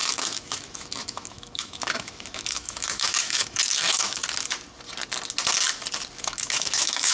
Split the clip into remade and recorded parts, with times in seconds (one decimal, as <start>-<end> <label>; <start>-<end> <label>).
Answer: 0.0-4.2 remade; 4.2-6.2 recorded; 6.2-7.1 remade